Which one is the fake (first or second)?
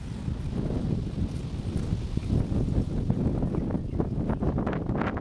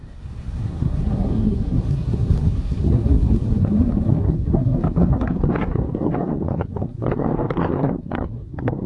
second